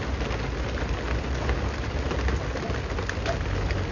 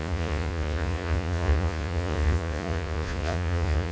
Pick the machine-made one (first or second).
second